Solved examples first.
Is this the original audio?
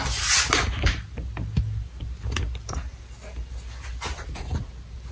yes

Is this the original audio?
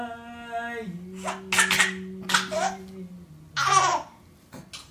yes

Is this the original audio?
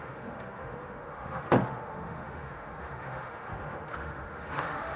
no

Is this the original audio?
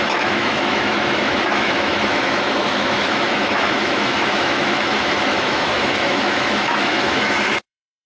no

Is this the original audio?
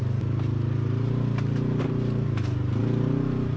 yes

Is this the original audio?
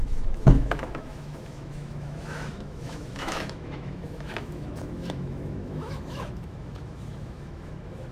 no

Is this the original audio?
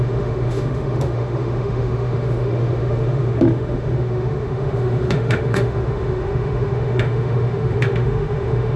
no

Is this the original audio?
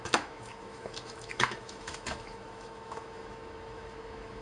no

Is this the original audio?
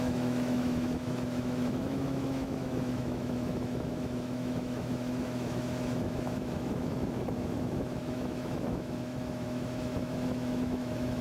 no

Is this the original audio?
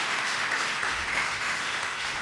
no